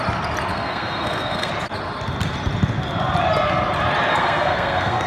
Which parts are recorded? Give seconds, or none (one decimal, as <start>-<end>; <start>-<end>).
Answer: 0.0-0.5; 1.5-4.1